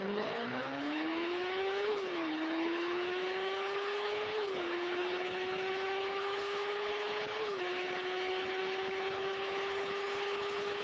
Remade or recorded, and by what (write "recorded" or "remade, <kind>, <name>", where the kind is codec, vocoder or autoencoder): remade, codec, HILCodec